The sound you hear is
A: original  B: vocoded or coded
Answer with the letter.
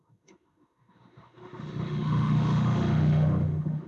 B